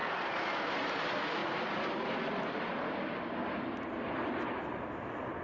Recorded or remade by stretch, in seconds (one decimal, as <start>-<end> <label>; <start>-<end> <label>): 0.0-5.4 recorded